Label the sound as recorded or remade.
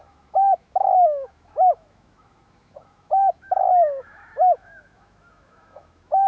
remade